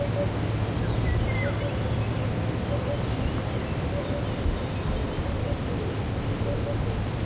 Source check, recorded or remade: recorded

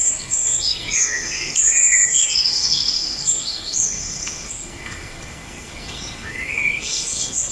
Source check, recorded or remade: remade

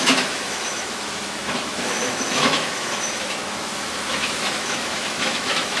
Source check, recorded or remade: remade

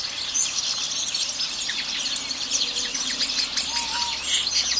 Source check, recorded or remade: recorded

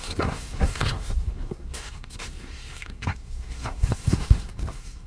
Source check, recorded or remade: remade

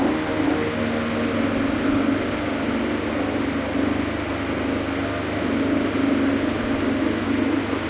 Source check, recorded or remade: recorded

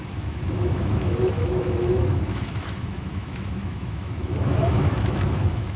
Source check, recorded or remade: remade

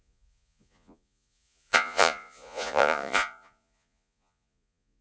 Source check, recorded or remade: remade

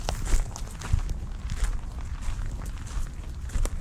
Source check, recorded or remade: recorded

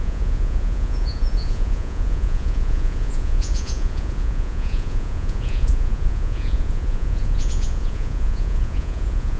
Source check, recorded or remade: remade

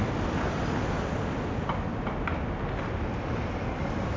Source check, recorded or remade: recorded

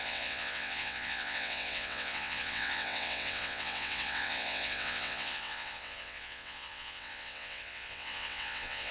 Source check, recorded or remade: remade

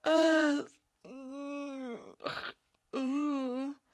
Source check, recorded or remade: remade